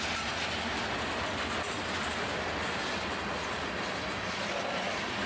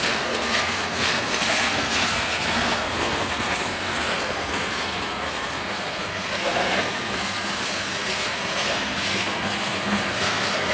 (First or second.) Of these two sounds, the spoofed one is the second